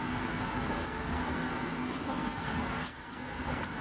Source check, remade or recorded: remade